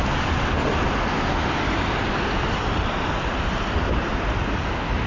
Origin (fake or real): fake